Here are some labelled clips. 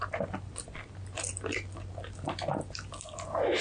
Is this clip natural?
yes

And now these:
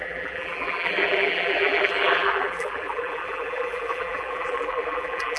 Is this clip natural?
no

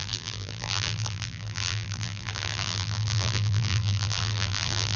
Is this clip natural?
no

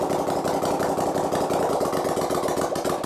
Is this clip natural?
yes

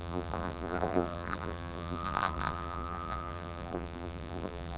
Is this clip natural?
no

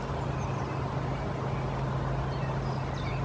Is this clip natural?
yes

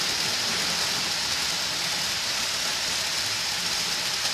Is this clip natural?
yes